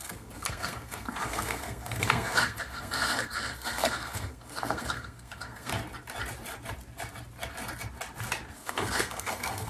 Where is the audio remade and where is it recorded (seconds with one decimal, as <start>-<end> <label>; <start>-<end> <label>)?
0.0-5.7 remade; 5.7-8.5 recorded; 8.5-9.7 remade